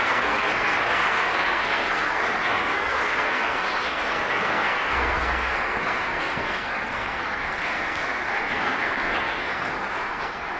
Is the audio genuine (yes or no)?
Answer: no